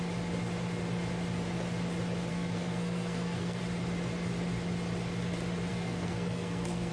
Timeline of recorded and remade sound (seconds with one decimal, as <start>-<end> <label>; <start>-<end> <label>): 0.0-2.3 recorded; 2.3-3.6 remade; 3.6-5.7 recorded; 5.7-6.9 remade